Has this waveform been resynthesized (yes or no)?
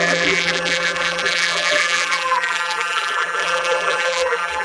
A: yes